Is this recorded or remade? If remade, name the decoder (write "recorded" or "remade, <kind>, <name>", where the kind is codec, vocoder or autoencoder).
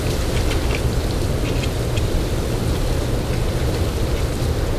recorded